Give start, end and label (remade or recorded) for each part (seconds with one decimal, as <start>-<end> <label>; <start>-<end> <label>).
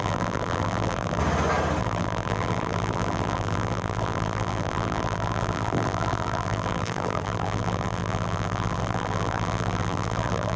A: 0.0-1.2 remade; 1.2-1.8 recorded; 1.8-10.6 remade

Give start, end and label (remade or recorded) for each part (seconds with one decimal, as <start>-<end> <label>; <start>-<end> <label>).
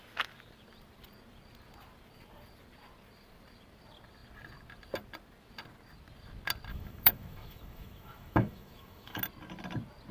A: 0.0-6.7 recorded; 6.7-9.2 remade; 9.2-10.1 recorded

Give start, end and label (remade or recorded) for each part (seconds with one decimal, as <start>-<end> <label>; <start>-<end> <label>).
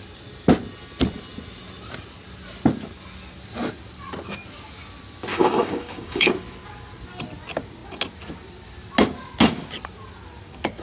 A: 0.0-5.3 recorded; 5.3-6.3 remade; 6.3-10.8 recorded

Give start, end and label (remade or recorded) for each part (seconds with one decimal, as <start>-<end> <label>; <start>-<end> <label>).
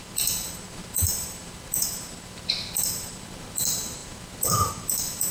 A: 0.0-5.3 remade